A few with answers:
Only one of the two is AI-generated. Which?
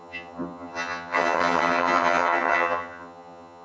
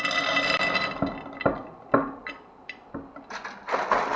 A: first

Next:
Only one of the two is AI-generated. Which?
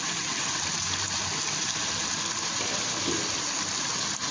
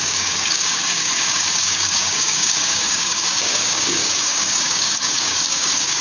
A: second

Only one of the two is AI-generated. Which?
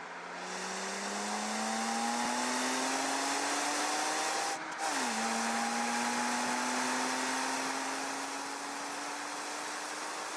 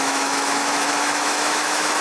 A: second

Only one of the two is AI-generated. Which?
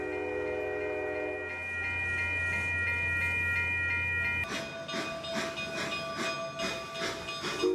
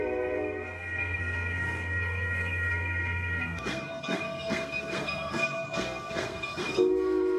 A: second